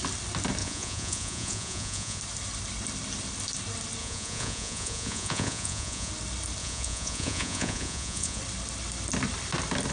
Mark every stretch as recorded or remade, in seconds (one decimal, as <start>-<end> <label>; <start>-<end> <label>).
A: 0.0-0.6 recorded; 0.6-2.2 remade; 2.2-4.0 recorded; 4.0-6.1 remade; 6.1-6.6 recorded; 6.6-8.4 remade; 8.4-9.9 recorded